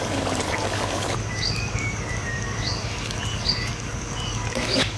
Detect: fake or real fake